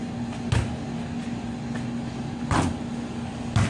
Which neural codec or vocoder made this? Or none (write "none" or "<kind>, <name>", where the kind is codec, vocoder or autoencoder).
none